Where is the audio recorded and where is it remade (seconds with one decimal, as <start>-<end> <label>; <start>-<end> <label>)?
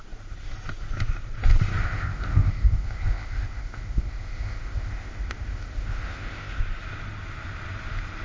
0.0-1.8 recorded; 1.8-6.6 remade; 6.6-8.2 recorded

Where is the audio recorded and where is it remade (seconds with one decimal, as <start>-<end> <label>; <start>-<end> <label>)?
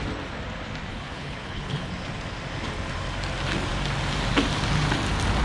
0.0-0.9 recorded; 0.9-1.9 remade; 1.9-5.4 recorded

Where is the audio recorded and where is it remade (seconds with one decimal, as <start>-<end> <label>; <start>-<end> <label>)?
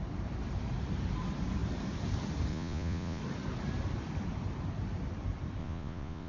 0.0-2.5 recorded; 2.5-3.2 remade; 3.2-5.6 recorded; 5.6-6.3 remade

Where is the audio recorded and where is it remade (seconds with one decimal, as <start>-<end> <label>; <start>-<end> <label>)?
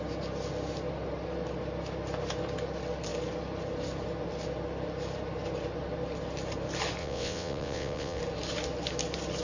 0.0-7.0 recorded; 7.0-8.2 remade; 8.2-9.4 recorded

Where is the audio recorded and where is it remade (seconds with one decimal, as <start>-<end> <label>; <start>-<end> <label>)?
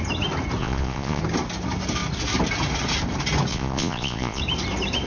0.0-0.6 recorded; 0.6-1.2 remade; 1.2-3.5 recorded; 3.5-4.4 remade; 4.4-5.1 recorded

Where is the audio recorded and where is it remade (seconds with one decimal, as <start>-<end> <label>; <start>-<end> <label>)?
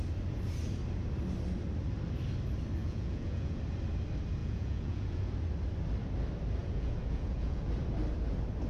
0.0-2.8 recorded; 2.8-3.6 remade; 3.6-4.4 recorded; 4.4-5.3 remade; 5.3-6.6 recorded; 6.6-7.7 remade; 7.7-8.7 recorded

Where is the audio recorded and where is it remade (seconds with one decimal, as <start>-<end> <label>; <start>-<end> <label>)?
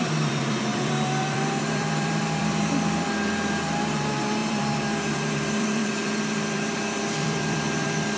0.0-8.2 remade